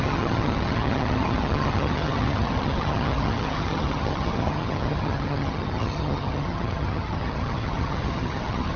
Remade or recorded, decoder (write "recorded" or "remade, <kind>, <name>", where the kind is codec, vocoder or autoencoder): remade, vocoder, HiFi-GAN